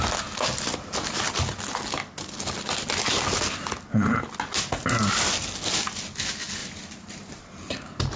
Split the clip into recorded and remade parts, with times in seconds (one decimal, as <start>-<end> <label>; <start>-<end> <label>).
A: 0.0-6.6 recorded; 6.6-8.2 remade